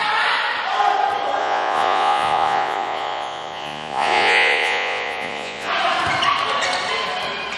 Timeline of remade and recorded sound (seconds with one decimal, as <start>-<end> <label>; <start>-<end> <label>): 0.0-1.4 recorded; 1.4-5.7 remade; 5.7-7.6 recorded